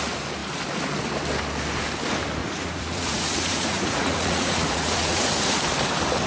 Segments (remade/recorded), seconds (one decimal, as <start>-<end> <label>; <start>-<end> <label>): 0.0-2.4 recorded; 2.4-5.6 remade; 5.6-6.3 recorded